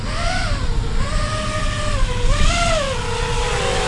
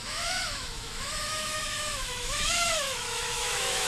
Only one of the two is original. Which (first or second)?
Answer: first